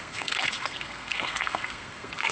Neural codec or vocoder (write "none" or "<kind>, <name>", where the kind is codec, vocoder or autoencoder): codec, SNAC